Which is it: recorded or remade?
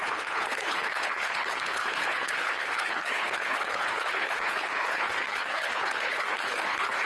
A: remade